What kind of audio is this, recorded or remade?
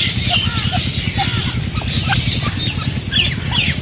recorded